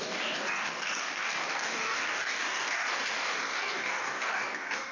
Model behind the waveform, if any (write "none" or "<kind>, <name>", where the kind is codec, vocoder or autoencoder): codec, DAC